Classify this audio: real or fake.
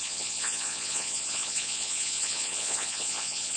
fake